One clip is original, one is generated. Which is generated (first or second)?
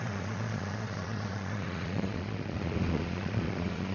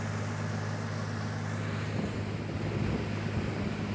first